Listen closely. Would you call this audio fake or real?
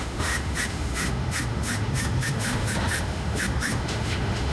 fake